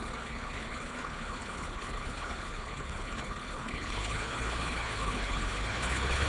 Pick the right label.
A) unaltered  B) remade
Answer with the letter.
B